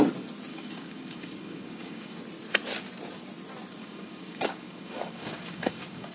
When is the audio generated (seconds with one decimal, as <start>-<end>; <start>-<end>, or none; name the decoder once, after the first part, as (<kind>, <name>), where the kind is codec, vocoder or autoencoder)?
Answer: 0.5-2.2 (codec, DAC); 3.8-6.1